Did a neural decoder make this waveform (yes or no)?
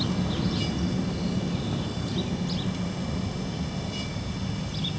no